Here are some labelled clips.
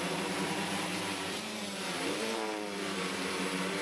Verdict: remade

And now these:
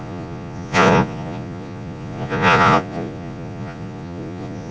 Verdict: remade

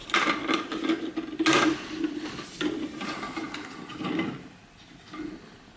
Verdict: recorded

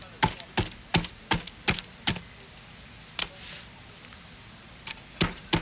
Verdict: recorded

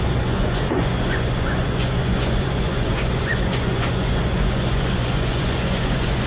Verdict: remade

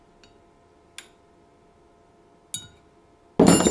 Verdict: recorded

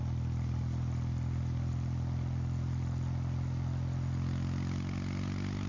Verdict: recorded